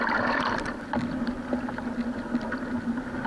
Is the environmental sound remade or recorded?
recorded